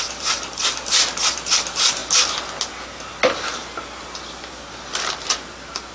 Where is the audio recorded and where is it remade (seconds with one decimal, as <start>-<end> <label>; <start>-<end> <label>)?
0.0-5.9 recorded